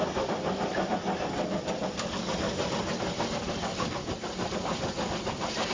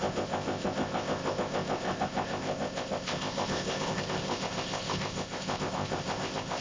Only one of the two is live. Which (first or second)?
first